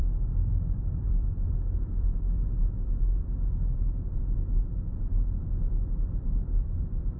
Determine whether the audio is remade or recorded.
remade